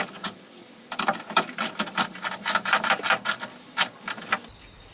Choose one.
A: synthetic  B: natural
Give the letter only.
A